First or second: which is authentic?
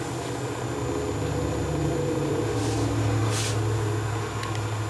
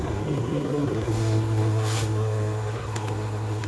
first